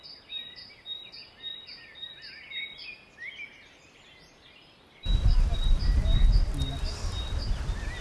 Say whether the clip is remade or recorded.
recorded